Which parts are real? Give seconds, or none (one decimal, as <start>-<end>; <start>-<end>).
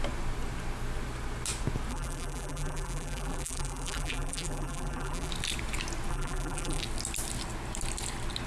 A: 0.0-1.9; 5.3-6.1; 6.8-8.5